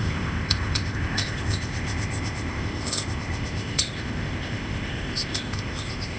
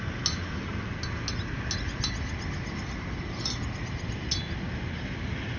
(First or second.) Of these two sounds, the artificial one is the first